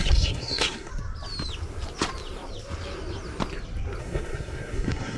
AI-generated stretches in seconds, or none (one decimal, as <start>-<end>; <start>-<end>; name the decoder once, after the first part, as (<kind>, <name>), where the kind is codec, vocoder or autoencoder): 0.0-0.9 (codec, SNAC); 4.0-5.2